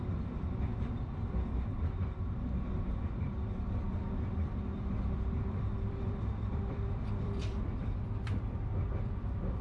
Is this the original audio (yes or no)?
no